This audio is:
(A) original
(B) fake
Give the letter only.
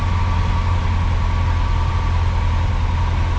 A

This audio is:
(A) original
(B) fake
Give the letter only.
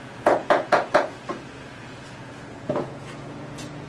B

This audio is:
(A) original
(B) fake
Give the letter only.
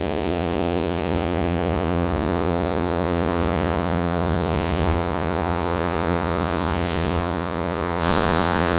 B